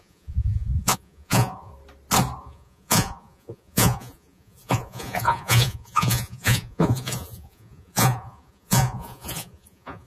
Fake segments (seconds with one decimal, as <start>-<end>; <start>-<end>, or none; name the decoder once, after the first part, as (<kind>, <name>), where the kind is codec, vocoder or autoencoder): 0.0-1.7 (vocoder, Vocos); 2.4-10.1